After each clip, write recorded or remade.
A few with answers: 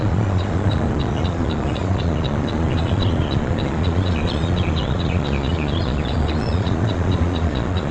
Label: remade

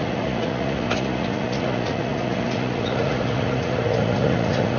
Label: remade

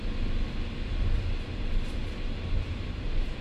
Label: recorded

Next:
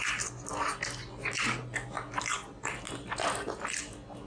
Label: recorded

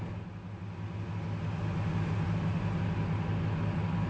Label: recorded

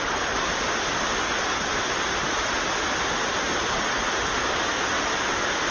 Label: recorded